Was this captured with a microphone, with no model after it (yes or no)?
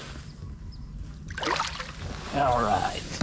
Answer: yes